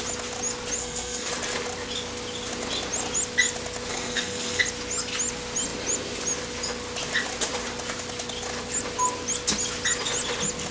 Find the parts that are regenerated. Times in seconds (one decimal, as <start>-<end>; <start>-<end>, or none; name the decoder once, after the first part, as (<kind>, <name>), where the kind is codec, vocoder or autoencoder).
0.8-1.3 (codec, SNAC); 3.9-4.6